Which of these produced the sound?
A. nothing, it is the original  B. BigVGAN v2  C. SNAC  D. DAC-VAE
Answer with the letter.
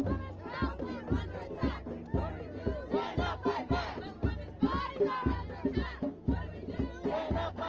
A